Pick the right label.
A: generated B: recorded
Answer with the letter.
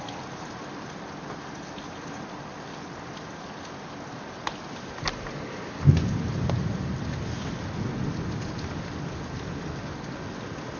B